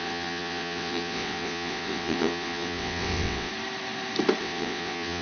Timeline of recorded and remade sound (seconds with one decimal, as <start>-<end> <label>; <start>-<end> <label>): 0.0-3.5 remade; 3.5-4.4 recorded; 4.4-5.2 remade